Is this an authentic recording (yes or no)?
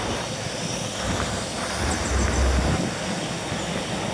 yes